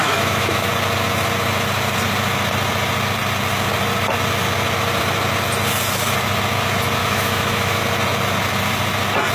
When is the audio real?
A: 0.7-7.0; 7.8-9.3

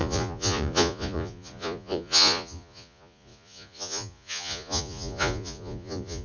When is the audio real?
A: none

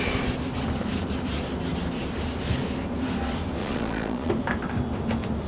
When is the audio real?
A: 0.0-3.6; 4.3-5.5